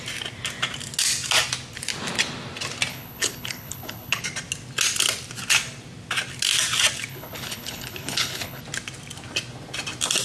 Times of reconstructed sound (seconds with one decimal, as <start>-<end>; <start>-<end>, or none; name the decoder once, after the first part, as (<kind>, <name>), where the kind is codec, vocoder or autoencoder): 2.9-4.2 (codec, HILCodec); 7.1-8.6